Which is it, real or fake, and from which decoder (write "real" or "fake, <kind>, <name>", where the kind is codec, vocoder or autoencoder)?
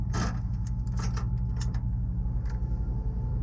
real